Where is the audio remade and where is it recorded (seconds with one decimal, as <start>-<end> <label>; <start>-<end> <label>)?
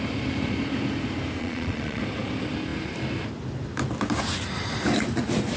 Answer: 0.0-1.4 recorded; 1.4-2.0 remade; 2.0-5.6 recorded